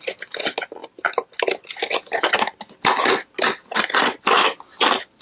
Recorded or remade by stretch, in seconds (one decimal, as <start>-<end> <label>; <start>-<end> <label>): 0.0-5.2 recorded